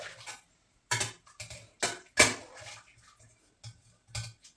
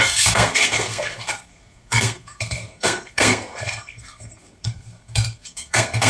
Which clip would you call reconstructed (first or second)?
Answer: second